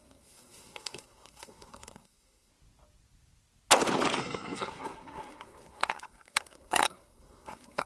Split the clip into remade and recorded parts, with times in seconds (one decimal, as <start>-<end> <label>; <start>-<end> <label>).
0.0-2.5 remade; 2.5-4.2 recorded; 4.2-7.9 remade